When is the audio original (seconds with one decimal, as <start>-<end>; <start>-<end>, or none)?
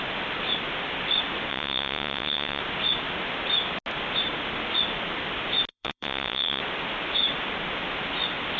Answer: 0.0-1.5; 2.6-5.7; 6.6-8.6